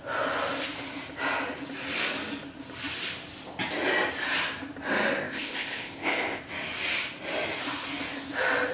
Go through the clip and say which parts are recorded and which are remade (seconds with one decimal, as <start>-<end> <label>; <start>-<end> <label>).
0.0-5.2 recorded; 5.2-6.4 remade; 6.4-8.7 recorded